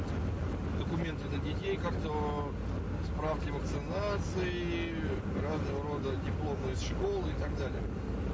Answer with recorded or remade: recorded